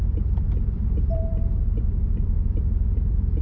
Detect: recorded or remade remade